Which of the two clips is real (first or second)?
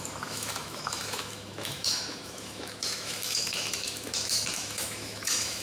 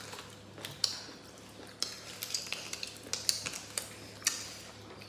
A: second